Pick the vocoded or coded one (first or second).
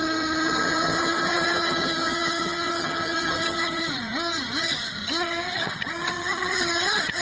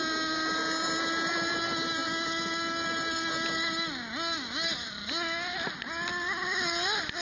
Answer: first